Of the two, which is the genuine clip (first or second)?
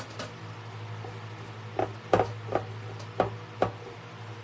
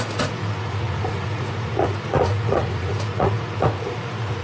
first